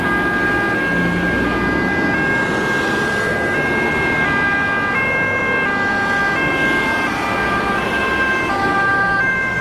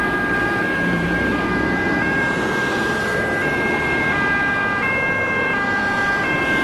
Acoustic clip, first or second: first